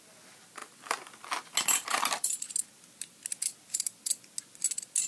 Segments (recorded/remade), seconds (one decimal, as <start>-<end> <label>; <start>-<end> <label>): 0.0-5.1 recorded